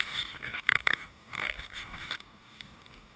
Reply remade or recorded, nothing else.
remade